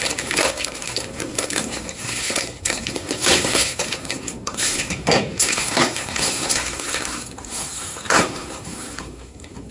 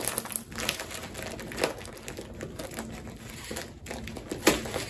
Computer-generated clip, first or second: first